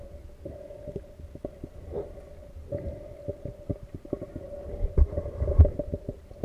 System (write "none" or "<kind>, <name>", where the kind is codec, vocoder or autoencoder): none